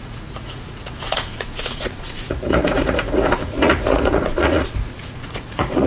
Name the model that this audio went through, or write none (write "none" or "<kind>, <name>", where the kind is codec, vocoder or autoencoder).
vocoder, Vocos